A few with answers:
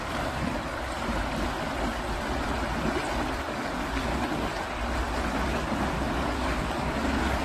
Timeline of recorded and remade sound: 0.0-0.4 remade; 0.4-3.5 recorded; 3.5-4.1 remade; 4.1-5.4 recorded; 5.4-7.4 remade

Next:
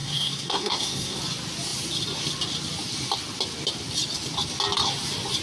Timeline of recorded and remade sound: 0.0-1.2 remade; 1.2-5.4 recorded

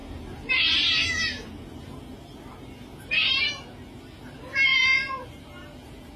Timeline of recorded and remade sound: 0.0-6.2 recorded

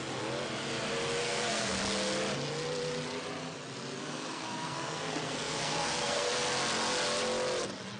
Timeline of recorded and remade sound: 0.0-1.2 recorded; 1.2-1.8 remade; 1.8-4.0 recorded; 4.0-6.3 remade; 6.3-8.0 recorded